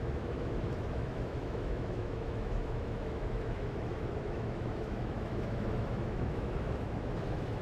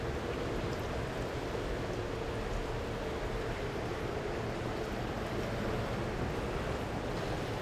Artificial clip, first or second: first